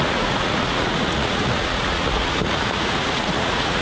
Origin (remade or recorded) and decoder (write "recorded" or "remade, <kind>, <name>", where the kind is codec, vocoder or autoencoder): remade, vocoder, Vocos